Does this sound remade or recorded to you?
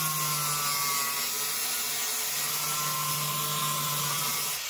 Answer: recorded